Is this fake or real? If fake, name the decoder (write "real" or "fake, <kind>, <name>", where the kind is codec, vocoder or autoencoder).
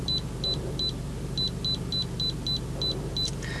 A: real